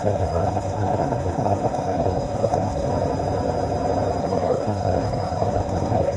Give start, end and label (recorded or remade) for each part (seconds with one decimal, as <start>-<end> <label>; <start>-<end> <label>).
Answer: 0.0-2.9 remade; 2.9-4.2 recorded; 4.2-6.2 remade